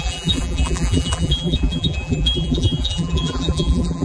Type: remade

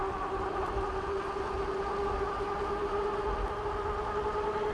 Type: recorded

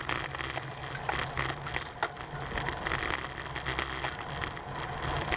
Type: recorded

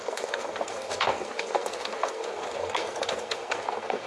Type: remade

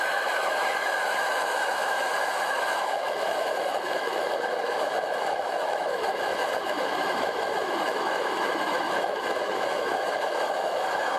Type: remade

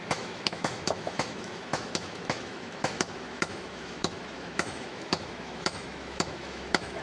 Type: remade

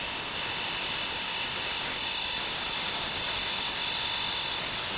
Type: recorded